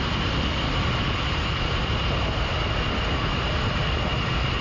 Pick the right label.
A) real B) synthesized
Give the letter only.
A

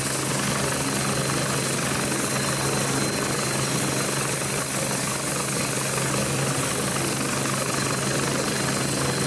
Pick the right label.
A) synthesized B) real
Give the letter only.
B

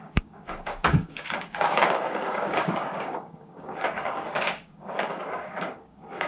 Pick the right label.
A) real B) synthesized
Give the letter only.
B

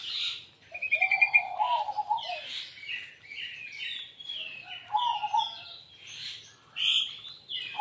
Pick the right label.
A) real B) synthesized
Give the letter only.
A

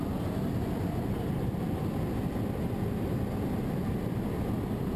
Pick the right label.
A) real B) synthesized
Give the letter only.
A